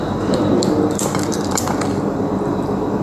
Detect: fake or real fake